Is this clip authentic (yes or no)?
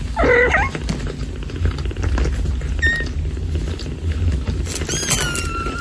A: yes